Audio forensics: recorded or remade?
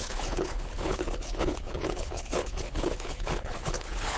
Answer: remade